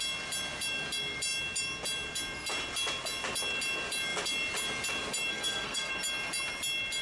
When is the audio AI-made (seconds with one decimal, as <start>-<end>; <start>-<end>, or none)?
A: 5.3-5.9